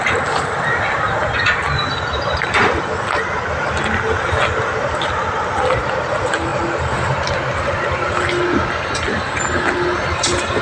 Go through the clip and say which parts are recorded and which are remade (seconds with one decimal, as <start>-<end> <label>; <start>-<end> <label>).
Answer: 0.0-10.6 recorded